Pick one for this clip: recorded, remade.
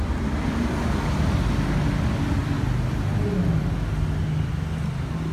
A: recorded